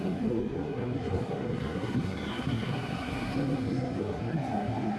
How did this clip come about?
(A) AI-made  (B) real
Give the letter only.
A